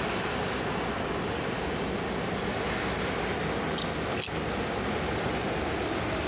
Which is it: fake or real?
real